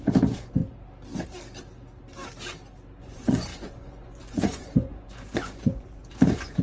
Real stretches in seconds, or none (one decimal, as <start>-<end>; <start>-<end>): 0.6-3.0